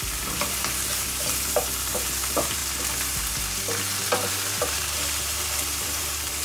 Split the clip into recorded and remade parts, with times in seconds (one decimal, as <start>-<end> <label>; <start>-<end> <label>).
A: 0.0-2.6 remade; 2.6-4.3 recorded; 4.3-6.4 remade